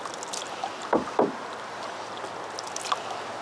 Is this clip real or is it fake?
real